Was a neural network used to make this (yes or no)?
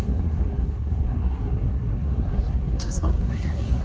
yes